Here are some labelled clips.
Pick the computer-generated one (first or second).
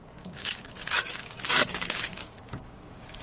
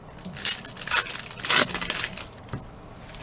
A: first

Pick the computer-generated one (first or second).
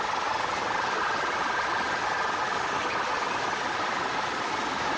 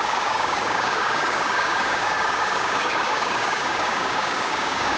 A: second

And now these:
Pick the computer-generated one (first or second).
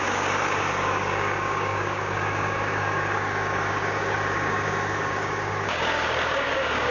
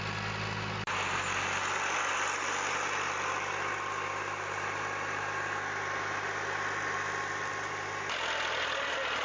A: first